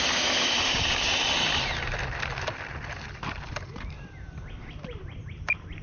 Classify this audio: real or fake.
fake